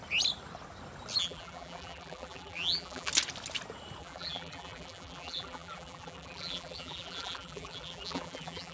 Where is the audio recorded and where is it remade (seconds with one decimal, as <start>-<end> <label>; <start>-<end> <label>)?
0.0-1.2 recorded; 1.2-3.1 remade; 3.1-4.0 recorded; 4.0-8.7 remade